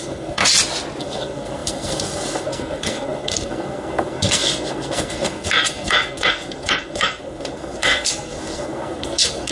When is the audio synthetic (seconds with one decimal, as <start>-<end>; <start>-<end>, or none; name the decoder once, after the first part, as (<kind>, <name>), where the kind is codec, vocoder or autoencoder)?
0.0-0.4 (codec, SNAC); 1.0-9.5